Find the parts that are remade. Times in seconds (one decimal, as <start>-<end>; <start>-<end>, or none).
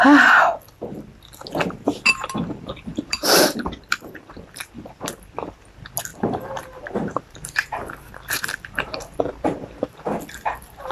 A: 2.9-4.8; 6.1-10.0